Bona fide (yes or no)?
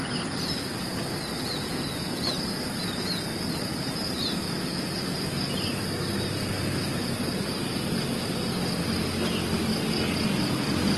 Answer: yes